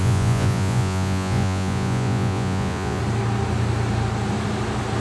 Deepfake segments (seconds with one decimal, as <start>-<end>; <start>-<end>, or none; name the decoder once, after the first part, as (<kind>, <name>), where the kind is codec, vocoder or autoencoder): 0.0-3.0 (vocoder, Vocos)